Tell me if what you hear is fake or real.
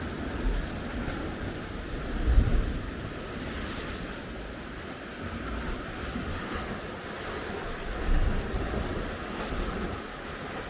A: real